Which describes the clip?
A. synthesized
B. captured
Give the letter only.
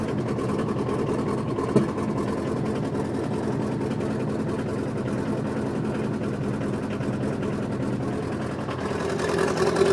B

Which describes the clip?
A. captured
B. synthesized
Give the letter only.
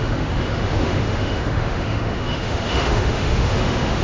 B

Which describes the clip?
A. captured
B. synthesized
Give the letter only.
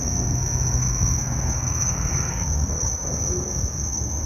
B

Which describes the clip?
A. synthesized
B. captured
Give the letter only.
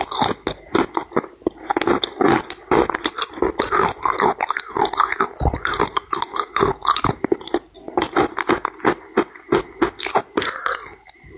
B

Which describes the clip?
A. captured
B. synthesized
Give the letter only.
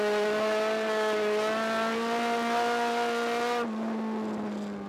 A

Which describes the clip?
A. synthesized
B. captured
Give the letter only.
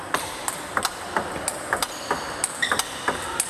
B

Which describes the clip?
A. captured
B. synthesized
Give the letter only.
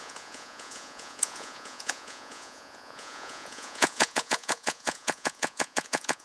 B